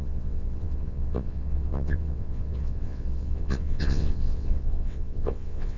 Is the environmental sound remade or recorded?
remade